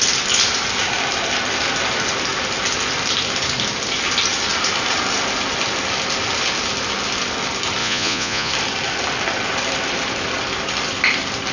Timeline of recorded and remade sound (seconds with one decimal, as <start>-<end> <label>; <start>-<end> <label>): 0.0-7.8 recorded; 7.8-8.5 remade; 8.5-11.5 recorded